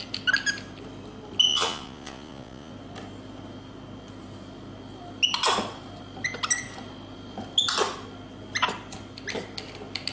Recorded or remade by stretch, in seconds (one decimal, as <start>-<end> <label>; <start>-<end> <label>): 0.0-1.5 recorded; 1.5-2.7 remade; 2.7-10.1 recorded